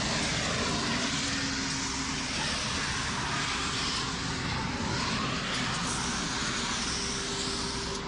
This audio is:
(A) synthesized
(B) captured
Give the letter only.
B